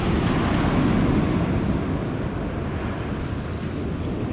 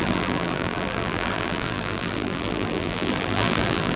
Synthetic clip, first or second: second